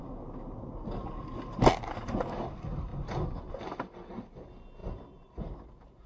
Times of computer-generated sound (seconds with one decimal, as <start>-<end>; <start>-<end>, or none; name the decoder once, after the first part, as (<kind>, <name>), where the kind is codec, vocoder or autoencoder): none